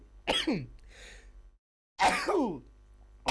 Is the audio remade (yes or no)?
no